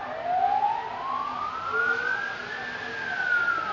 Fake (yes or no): no